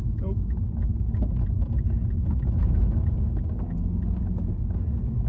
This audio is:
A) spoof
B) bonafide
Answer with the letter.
B